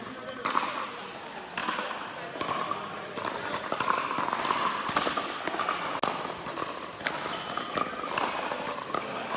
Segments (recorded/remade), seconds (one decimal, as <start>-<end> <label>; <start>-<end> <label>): 0.0-9.4 recorded